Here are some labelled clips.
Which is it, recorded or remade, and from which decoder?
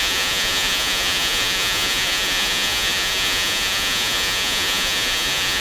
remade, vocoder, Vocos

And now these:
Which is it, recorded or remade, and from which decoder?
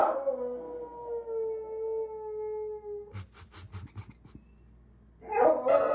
recorded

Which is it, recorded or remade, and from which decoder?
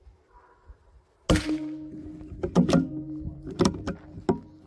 recorded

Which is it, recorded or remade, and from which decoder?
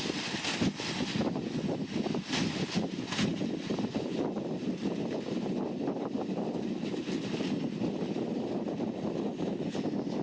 recorded